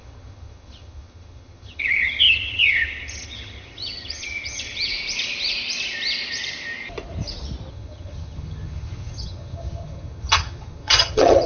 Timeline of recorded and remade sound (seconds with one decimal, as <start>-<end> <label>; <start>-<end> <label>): 0.0-4.9 remade; 4.9-7.7 recorded; 7.7-11.5 remade